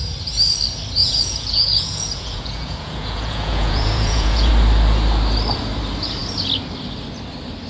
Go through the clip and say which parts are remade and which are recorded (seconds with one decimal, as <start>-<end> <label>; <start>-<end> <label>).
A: 0.0-1.0 recorded; 1.0-4.5 remade; 4.5-7.7 recorded